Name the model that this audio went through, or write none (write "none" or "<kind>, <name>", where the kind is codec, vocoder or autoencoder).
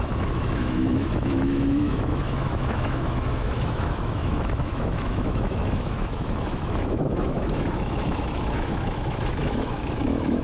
autoencoder, DAC-VAE